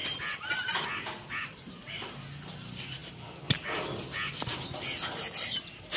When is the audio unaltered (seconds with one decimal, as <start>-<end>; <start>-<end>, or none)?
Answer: 0.0-6.0